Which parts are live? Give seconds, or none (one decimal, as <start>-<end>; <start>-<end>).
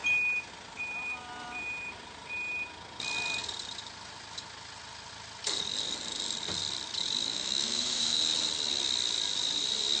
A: 0.0-7.3; 8.2-10.0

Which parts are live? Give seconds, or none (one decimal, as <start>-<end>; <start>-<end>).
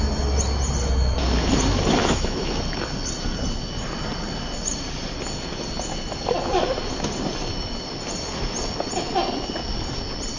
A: 0.0-2.0; 2.5-10.4